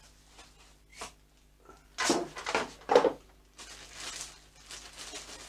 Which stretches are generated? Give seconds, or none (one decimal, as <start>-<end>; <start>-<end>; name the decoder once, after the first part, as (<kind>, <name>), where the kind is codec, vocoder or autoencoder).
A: none